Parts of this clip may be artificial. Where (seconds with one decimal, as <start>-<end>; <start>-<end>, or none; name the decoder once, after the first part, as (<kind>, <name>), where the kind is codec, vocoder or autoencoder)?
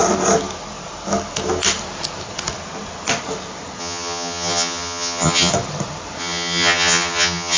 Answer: 3.8-5.5 (vocoder, HiFi-GAN); 6.2-7.6